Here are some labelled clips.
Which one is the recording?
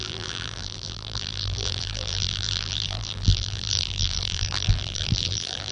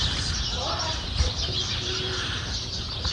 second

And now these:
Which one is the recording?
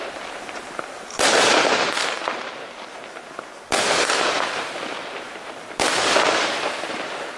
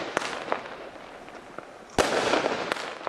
second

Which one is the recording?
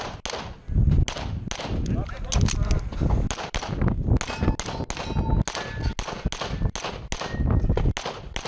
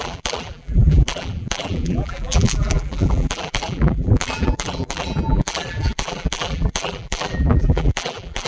first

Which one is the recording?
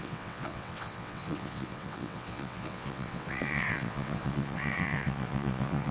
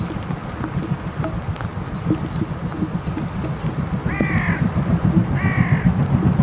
second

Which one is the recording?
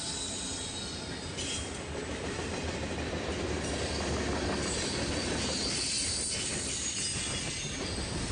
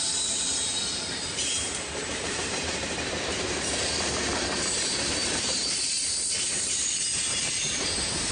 first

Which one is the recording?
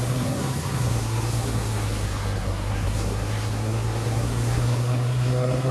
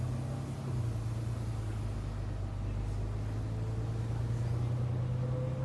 second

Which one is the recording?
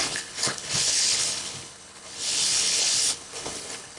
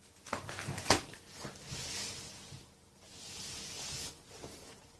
second